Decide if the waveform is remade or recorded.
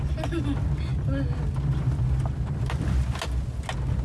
recorded